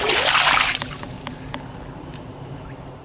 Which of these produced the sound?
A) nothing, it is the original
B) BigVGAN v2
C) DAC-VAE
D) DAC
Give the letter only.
B